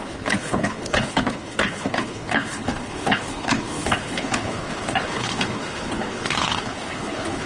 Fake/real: fake